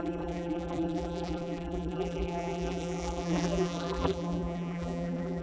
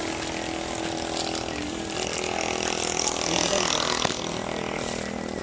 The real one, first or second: second